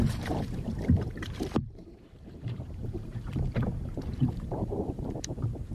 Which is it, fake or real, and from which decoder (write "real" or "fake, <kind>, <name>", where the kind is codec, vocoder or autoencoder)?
fake, vocoder, BigVGAN v2